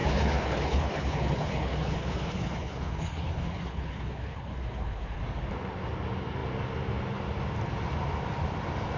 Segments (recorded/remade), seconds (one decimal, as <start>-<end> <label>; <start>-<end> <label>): 0.0-5.2 remade; 5.2-9.0 recorded